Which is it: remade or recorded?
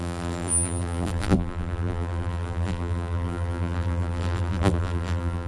remade